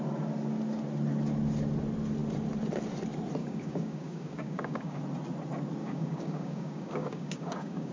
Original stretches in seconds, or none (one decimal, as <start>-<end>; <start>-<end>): 0.0-3.4; 5.0-5.8